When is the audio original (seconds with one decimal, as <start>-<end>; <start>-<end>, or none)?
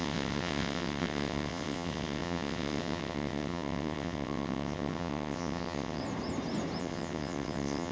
6.0-6.8